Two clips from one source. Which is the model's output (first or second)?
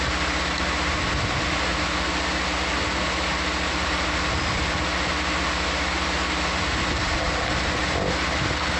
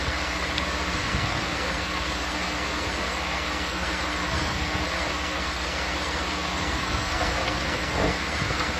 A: second